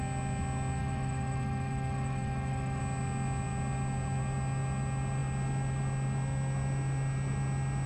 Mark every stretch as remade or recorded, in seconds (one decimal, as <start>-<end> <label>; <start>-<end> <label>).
0.0-0.8 recorded; 0.8-2.8 remade; 2.8-7.9 recorded